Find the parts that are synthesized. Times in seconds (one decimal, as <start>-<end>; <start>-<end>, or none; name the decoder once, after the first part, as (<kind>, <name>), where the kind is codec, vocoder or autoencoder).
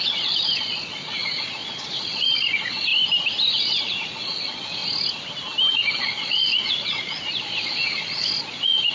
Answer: 0.0-2.9 (vocoder, Vocos); 3.5-4.8; 5.7-8.9